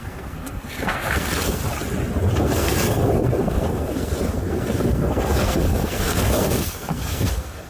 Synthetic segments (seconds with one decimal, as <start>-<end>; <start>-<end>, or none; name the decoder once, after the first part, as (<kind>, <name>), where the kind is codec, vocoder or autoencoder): 0.0-1.6 (codec, SNAC); 2.4-7.7